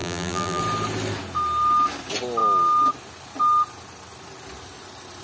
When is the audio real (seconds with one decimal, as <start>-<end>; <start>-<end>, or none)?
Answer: 0.6-5.2